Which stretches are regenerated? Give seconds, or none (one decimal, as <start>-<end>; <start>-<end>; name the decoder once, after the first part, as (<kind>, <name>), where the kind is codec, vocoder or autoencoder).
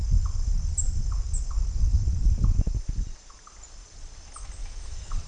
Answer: 4.6-5.3 (autoencoder, DAC-VAE)